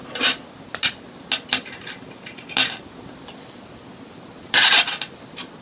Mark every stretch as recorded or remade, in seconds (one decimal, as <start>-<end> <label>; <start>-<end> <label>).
0.0-5.6 recorded